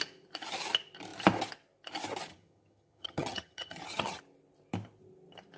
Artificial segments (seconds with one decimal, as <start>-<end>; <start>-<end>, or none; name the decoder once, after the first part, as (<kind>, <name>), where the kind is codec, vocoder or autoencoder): 2.3-4.2 (vocoder, HiFi-GAN)